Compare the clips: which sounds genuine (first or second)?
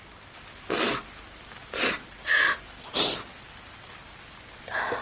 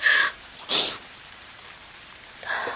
first